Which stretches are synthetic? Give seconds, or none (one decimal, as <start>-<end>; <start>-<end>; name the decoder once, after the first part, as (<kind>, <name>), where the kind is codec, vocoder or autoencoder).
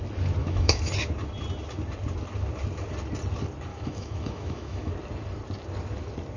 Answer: 0.4-0.9 (autoencoder, DAC-VAE); 3.7-4.9